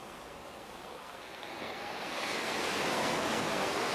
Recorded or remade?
remade